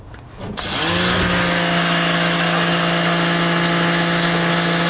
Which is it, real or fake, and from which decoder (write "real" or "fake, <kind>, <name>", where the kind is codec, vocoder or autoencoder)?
real